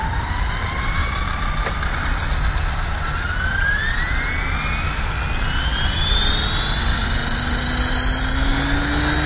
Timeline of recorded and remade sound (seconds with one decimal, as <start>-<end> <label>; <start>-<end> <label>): 0.0-1.0 recorded; 1.0-2.0 remade; 2.0-5.7 recorded; 5.7-6.3 remade; 6.3-6.9 recorded; 6.9-8.3 remade; 8.3-9.3 recorded